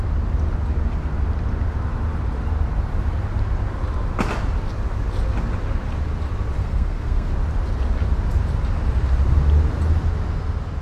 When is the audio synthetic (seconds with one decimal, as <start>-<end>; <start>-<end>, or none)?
6.6-7.3